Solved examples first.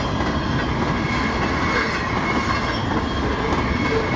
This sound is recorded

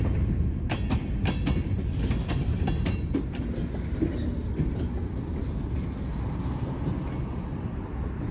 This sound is recorded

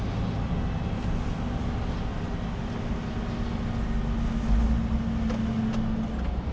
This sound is recorded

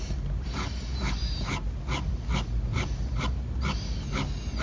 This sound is recorded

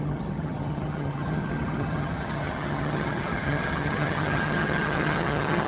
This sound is remade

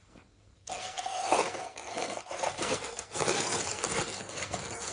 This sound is remade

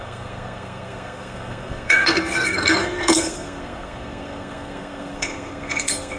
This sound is remade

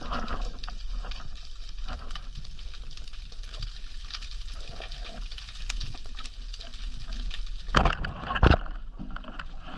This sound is recorded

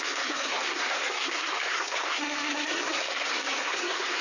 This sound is remade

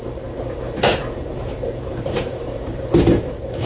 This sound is remade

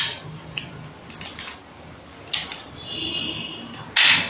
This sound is recorded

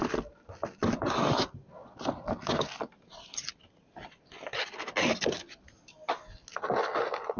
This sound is recorded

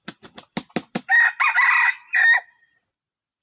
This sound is recorded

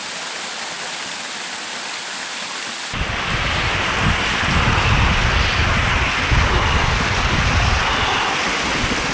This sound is recorded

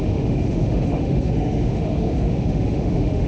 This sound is remade